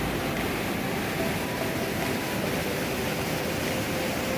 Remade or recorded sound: recorded